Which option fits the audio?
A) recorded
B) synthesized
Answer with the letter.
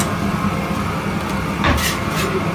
A